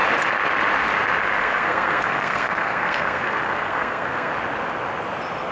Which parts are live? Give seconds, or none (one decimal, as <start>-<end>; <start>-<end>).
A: 0.0-1.4; 4.3-5.5